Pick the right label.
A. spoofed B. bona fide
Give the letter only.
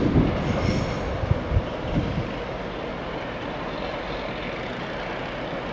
B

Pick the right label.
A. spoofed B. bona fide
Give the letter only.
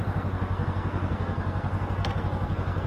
A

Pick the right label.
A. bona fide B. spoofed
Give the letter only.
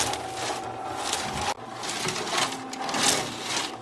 A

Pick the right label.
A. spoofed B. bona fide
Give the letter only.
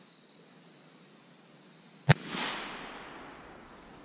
B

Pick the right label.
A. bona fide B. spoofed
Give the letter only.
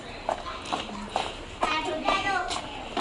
A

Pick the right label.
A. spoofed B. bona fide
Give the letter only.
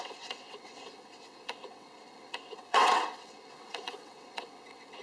A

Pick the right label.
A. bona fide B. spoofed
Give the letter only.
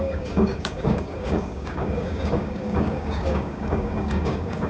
B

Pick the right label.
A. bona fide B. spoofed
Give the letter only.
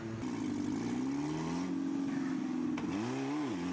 A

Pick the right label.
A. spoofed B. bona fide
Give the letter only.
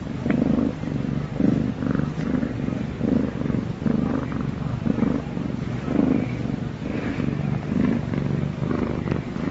B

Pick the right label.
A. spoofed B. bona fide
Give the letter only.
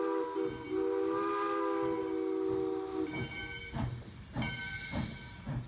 B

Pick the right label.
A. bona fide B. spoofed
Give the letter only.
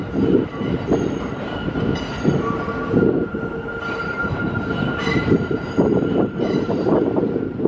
A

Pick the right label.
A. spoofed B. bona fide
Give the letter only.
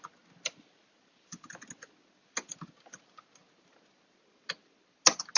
B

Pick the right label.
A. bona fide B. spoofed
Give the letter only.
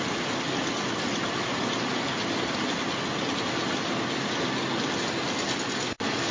A